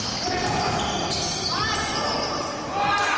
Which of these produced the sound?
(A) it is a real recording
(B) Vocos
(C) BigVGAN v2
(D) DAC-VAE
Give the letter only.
A